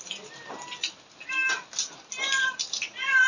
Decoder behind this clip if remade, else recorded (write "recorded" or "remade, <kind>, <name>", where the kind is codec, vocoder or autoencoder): recorded